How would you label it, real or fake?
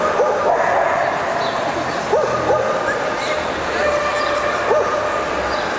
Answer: fake